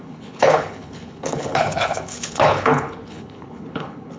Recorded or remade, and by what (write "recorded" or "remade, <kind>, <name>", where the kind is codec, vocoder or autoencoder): remade, codec, HILCodec